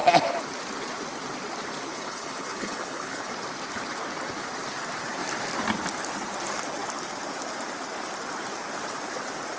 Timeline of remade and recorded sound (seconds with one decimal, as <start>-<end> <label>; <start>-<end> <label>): 0.0-1.9 recorded; 1.9-3.3 remade; 3.3-9.6 recorded